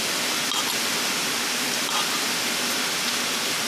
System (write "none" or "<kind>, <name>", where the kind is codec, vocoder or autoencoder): none